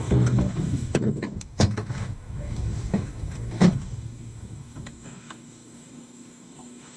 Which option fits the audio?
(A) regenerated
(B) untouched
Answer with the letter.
A